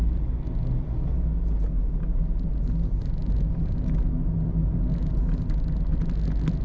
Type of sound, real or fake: real